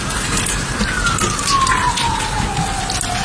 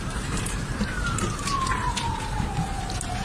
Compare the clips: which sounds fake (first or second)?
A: second